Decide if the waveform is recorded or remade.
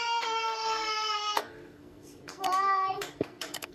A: remade